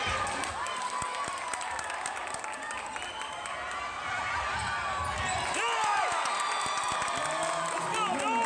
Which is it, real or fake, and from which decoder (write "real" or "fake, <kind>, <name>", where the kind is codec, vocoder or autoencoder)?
real